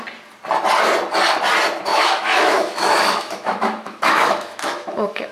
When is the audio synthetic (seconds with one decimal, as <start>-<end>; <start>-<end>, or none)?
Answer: 1.9-5.3